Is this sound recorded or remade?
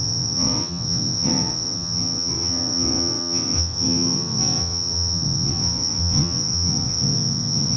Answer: remade